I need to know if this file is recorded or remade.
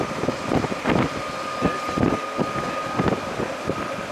recorded